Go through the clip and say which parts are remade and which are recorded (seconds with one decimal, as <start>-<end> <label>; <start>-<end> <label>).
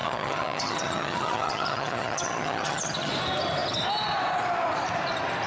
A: 0.0-3.1 remade; 3.1-5.5 recorded